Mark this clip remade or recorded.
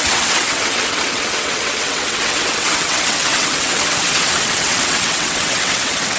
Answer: remade